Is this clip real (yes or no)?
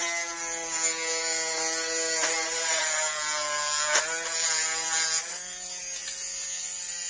yes